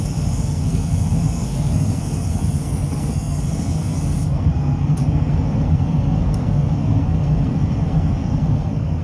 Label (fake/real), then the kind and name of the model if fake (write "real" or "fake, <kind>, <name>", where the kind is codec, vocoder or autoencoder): fake, codec, SNAC